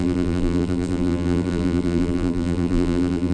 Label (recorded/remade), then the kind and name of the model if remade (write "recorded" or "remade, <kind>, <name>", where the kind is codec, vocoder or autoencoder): remade, vocoder, BigVGAN v2